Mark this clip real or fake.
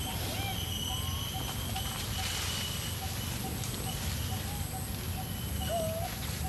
real